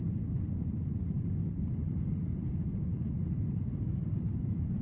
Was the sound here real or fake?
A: fake